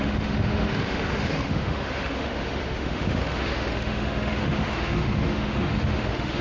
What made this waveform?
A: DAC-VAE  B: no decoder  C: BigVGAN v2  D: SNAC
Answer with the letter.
A